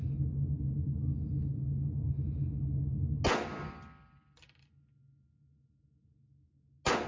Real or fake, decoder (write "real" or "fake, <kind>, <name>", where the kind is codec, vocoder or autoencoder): real